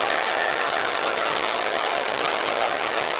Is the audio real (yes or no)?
no